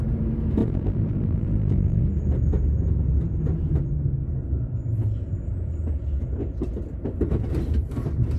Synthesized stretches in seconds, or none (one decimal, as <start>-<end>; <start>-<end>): 0.6-2.0